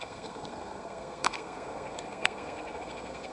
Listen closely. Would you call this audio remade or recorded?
remade